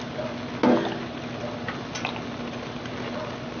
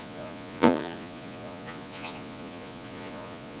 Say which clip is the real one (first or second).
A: first